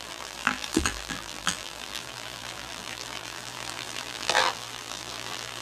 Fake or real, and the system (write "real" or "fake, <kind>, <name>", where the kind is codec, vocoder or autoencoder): fake, vocoder, BigVGAN v2